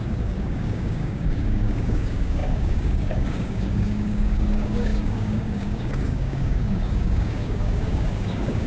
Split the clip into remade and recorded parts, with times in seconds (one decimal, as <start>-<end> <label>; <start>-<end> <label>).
0.0-8.7 remade